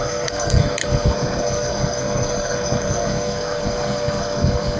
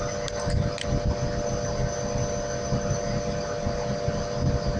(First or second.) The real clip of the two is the second